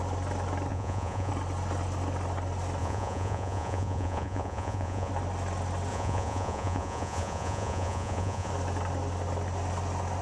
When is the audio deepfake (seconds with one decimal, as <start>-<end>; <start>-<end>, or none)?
0.7-1.3; 2.8-5.1; 5.9-8.5